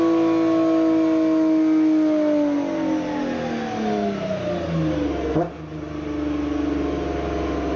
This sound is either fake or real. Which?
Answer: real